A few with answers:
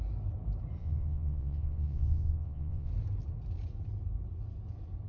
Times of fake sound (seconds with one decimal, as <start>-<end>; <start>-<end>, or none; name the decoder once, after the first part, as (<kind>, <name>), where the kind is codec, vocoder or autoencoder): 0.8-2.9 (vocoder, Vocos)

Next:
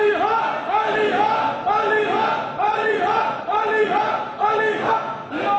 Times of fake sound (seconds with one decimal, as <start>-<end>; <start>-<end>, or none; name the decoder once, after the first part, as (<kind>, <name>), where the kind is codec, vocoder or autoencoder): 2.7-3.4 (vocoder, Vocos); 3.8-4.5

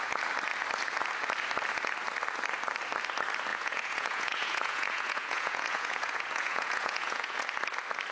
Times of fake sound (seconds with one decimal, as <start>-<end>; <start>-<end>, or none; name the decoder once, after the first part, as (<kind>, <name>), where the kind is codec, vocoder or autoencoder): 3.5-7.4 (vocoder, Vocos)

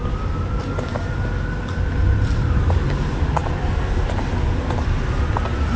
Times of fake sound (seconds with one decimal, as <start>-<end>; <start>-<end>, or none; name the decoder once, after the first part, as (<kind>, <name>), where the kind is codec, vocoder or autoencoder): none

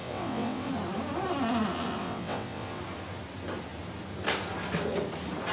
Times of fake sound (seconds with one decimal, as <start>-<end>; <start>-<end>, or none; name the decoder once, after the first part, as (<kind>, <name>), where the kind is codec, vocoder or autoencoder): 0.0-0.7 (vocoder, WaveNeXt); 2.0-2.8

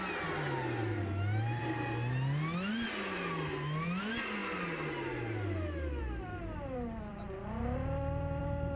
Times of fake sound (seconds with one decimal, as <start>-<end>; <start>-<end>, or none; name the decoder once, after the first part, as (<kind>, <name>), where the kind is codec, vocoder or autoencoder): none